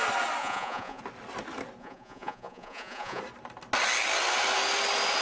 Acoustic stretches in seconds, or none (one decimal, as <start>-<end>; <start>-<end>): 0.0-0.4; 1.0-1.8; 3.2-5.2